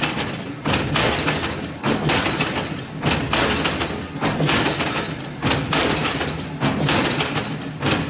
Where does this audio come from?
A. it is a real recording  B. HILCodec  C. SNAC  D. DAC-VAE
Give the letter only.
A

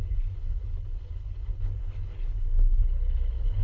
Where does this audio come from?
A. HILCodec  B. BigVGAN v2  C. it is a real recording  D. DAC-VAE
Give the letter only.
A